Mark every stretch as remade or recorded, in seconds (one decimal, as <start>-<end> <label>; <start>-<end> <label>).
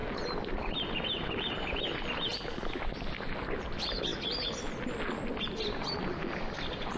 0.0-7.0 recorded